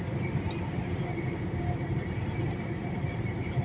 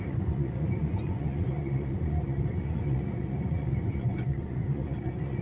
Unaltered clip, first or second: first